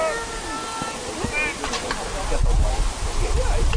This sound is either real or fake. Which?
real